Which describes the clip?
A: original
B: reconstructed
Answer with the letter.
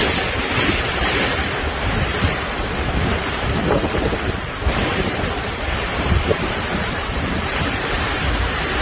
B